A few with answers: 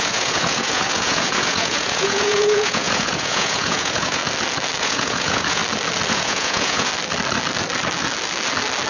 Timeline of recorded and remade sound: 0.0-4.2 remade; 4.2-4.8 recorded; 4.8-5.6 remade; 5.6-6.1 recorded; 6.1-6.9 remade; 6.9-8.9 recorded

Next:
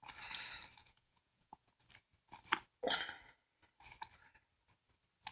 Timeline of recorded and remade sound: 0.0-0.8 recorded; 0.8-1.7 remade; 1.7-5.3 recorded

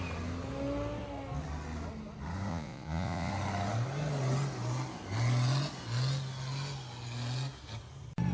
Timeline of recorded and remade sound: 0.0-2.5 recorded; 2.5-3.3 remade; 3.3-8.3 recorded

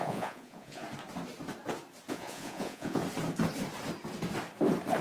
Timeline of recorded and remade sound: 0.0-0.8 remade; 0.8-2.1 recorded; 2.1-3.0 remade; 3.0-5.0 recorded

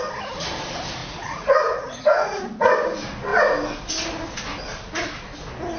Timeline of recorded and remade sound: 0.0-1.0 recorded; 1.0-2.4 remade; 2.4-5.8 recorded

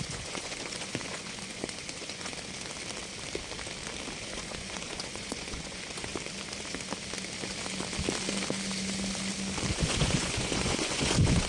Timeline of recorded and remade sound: 0.0-2.3 remade; 2.3-4.2 recorded; 4.2-6.1 remade; 6.1-9.7 recorded; 9.7-11.5 remade